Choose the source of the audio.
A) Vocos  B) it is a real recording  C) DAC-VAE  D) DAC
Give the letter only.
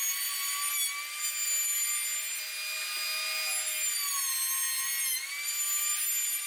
B